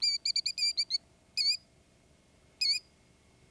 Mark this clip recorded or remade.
recorded